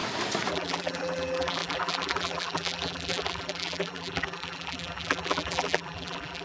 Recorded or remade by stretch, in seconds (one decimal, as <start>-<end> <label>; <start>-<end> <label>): 0.0-0.5 recorded; 0.5-6.4 remade